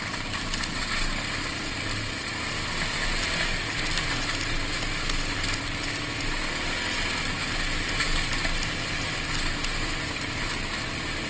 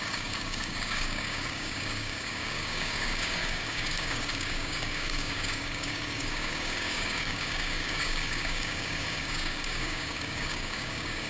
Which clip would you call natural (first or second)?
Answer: first